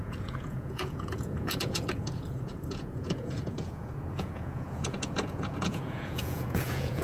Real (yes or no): no